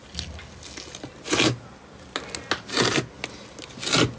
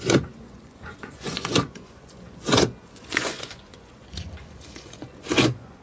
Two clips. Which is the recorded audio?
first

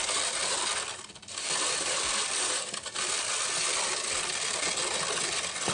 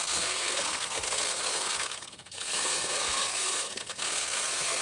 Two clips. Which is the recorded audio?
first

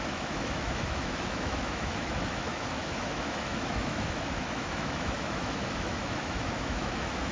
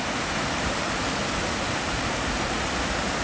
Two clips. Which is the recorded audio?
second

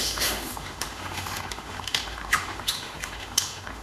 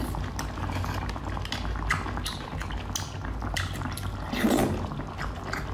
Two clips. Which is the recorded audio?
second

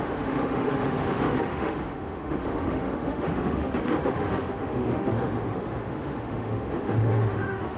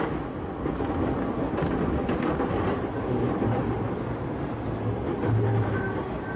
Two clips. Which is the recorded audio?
second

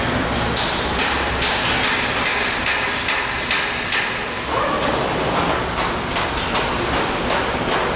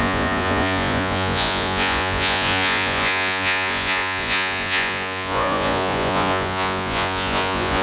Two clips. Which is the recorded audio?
first